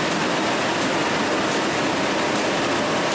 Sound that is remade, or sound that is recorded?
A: recorded